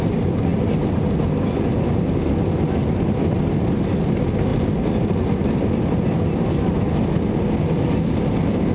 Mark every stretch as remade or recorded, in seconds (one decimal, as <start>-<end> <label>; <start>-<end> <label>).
0.0-8.7 recorded